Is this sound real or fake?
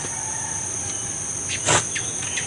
real